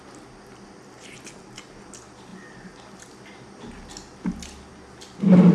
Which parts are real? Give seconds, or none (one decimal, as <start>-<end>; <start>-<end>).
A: 0.0-5.5